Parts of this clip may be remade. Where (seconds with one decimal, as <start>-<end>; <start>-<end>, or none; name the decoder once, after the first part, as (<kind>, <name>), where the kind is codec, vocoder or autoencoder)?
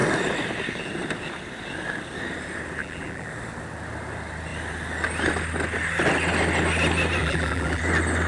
2.8-3.3 (vocoder, BigVGAN v2); 7.2-7.8